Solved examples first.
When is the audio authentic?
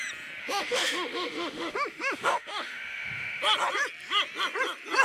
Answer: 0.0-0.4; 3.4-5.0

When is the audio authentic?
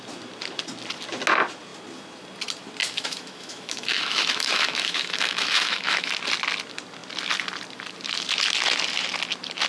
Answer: 0.0-2.8; 6.1-9.7